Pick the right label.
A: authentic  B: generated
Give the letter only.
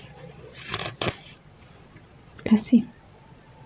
B